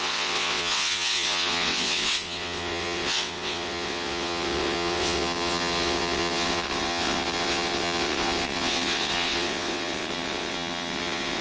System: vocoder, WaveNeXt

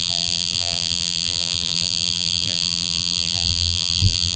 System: vocoder, BigVGAN v2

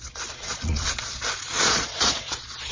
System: vocoder, Vocos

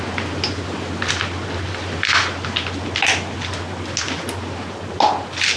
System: none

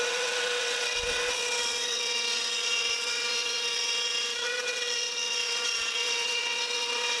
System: vocoder, WaveNeXt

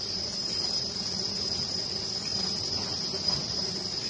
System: none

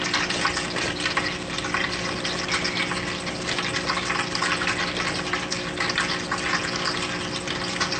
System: none